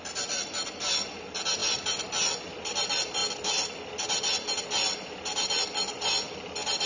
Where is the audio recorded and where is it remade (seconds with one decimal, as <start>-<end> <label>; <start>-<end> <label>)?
0.0-6.9 recorded